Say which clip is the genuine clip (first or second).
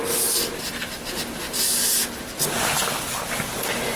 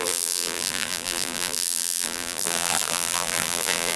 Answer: first